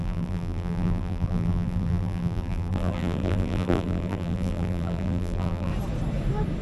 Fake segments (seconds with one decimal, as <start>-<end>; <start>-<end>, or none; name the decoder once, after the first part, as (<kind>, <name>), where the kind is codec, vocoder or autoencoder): 0.0-5.7 (vocoder, BigVGAN v2)